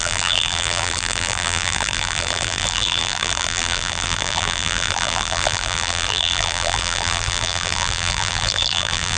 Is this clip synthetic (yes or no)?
yes